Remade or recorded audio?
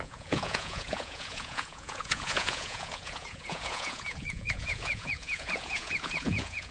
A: remade